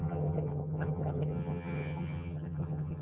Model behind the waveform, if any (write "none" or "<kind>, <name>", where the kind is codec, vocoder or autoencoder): vocoder, HiFi-GAN